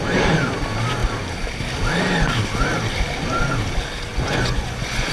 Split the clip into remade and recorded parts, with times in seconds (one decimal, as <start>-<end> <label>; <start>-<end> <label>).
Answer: 0.0-4.1 recorded; 4.1-5.1 remade